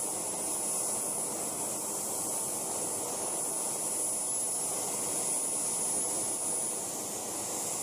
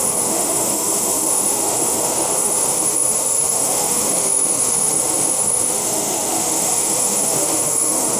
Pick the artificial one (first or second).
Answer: second